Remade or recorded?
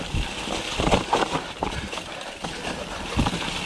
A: recorded